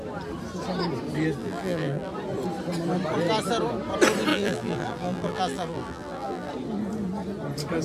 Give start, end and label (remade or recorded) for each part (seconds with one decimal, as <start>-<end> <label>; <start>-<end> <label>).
0.0-1.4 recorded; 1.4-2.1 remade; 2.1-4.3 recorded; 4.3-6.5 remade; 6.5-7.8 recorded

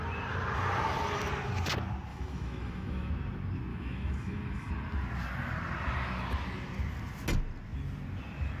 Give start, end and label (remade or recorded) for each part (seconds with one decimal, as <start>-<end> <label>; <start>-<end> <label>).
0.0-2.1 recorded; 2.1-3.1 remade; 3.1-3.7 recorded; 3.7-4.7 remade; 4.7-8.6 recorded

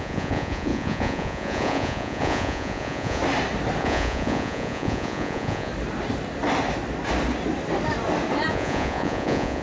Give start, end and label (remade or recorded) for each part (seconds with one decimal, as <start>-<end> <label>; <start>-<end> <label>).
0.0-3.2 remade; 3.2-3.8 recorded; 3.8-5.7 remade; 5.7-8.5 recorded; 8.5-9.6 remade